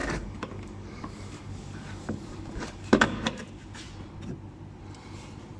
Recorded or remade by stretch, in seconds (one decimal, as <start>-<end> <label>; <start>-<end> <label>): 0.0-3.2 remade; 3.2-5.6 recorded